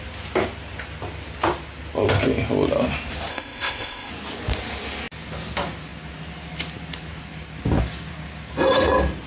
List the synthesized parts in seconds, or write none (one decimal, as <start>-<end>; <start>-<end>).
3.3-4.1